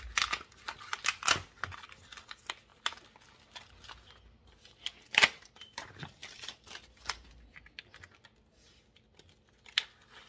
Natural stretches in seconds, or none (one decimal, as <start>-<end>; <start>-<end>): 0.0-10.3